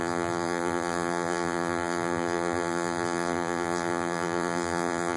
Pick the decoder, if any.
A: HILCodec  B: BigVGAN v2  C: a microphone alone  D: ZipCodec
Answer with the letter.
B